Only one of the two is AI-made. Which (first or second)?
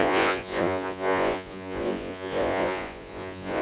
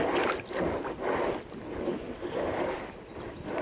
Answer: first